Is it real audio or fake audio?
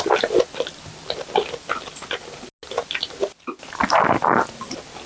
real